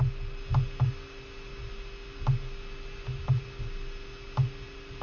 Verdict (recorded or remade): recorded